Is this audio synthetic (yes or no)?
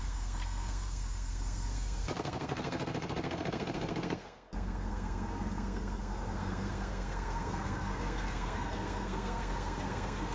yes